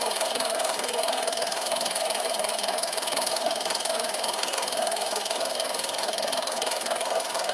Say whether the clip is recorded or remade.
remade